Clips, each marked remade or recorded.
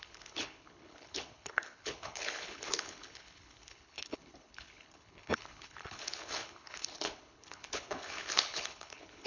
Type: remade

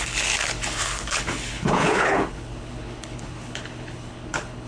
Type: remade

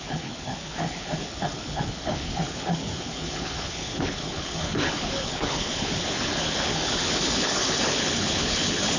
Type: remade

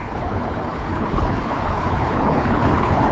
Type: remade